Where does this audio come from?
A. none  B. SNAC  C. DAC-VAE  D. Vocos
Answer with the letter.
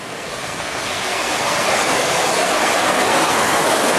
B